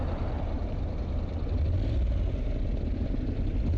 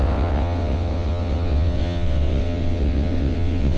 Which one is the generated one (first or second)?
second